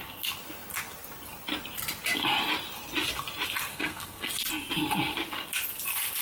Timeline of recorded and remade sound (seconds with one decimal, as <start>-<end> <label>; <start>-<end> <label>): 0.0-3.7 recorded; 3.7-4.3 remade; 4.3-6.2 recorded